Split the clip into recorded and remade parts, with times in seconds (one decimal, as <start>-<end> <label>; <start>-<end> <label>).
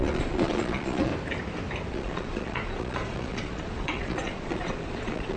0.0-1.1 remade; 1.1-1.9 recorded; 1.9-5.4 remade